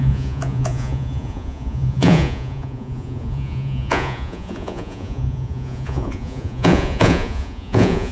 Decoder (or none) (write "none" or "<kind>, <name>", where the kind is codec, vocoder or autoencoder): vocoder, Vocos